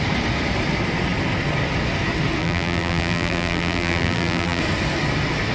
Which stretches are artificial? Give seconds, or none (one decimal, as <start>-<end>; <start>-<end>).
2.4-4.6